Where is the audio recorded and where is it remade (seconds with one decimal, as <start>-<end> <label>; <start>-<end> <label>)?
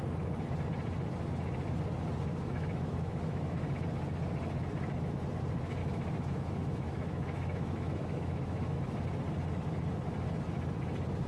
0.0-2.3 recorded; 2.3-3.7 remade; 3.7-5.8 recorded; 5.8-9.0 remade; 9.0-11.3 recorded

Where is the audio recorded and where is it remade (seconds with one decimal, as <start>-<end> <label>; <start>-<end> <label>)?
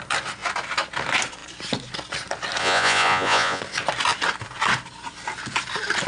0.0-2.6 recorded; 2.6-3.6 remade; 3.6-6.1 recorded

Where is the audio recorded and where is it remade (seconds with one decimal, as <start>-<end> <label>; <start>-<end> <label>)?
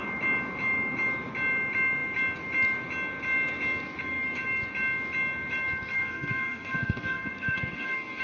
0.0-5.9 recorded; 5.9-8.2 remade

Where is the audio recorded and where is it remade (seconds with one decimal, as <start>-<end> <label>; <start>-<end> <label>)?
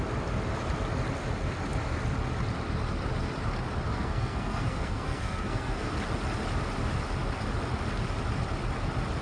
0.0-3.9 recorded; 3.9-5.9 remade; 5.9-9.2 recorded